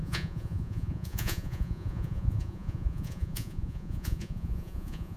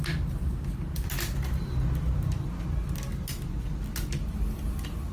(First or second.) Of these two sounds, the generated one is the first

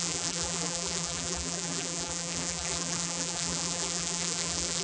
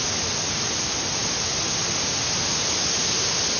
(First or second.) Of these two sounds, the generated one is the first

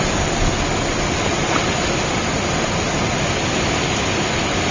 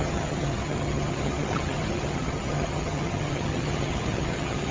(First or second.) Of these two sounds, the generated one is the second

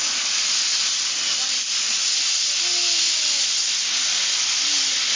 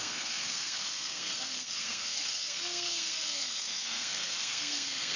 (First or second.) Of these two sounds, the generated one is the second